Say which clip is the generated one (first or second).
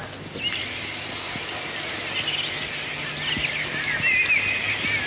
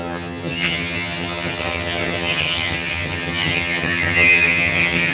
second